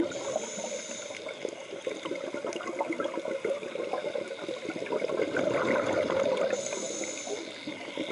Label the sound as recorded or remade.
recorded